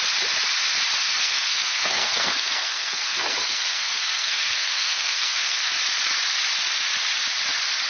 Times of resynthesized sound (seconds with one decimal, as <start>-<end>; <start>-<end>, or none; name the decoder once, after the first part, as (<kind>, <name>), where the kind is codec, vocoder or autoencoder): 1.0-5.7 (codec, SNAC)